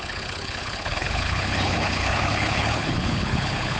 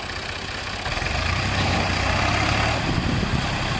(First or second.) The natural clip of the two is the second